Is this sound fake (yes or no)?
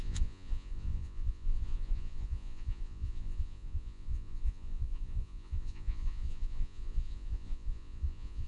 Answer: yes